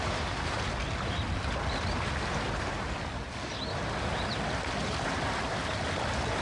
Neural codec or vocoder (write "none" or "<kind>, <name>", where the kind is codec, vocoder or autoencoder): none